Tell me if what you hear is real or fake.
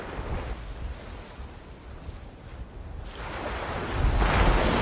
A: real